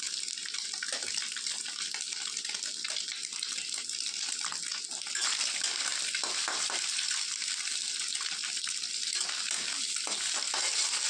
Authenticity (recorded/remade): recorded